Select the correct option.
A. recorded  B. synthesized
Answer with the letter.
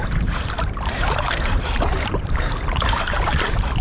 B